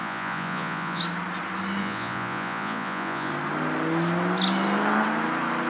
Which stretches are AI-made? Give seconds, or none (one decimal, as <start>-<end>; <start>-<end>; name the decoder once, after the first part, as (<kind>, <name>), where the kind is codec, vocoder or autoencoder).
0.0-1.0 (vocoder, Vocos); 1.8-3.3